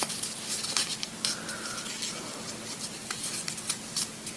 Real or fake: real